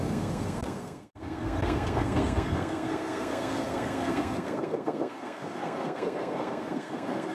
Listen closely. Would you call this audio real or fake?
fake